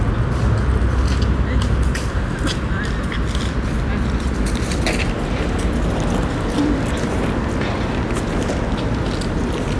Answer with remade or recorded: recorded